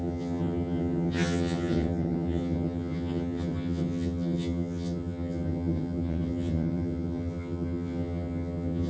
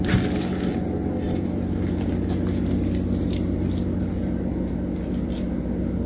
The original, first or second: second